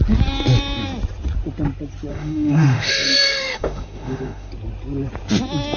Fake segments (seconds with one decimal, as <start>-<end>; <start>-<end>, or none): 2.1-4.5